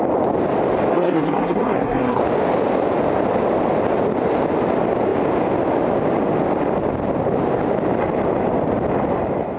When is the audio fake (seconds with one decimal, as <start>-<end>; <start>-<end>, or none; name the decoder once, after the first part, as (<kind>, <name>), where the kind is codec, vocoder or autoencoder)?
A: 0.9-2.2 (codec, SNAC)